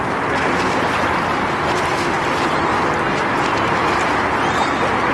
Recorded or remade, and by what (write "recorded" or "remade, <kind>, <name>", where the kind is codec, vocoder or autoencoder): recorded